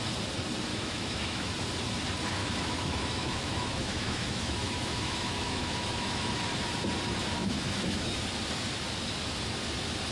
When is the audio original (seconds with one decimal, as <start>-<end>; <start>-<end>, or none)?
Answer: 0.0-0.7; 1.5-2.4; 6.3-7.4; 8.1-10.1